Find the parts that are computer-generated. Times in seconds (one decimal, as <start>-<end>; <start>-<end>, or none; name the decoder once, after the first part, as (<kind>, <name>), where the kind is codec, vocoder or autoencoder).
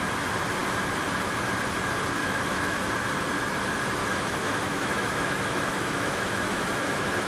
2.2-2.9 (autoencoder, DAC-VAE); 4.0-7.3